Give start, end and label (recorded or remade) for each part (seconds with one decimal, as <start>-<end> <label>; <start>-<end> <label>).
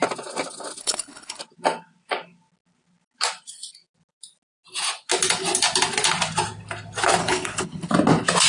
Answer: 0.0-0.8 recorded; 0.8-1.4 remade; 1.4-7.2 recorded; 7.2-7.9 remade; 7.9-8.5 recorded